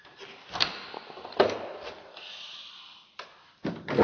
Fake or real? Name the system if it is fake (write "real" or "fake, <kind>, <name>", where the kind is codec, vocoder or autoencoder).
fake, vocoder, BigVGAN v2